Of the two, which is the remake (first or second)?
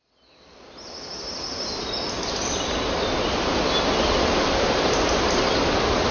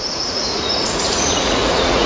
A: second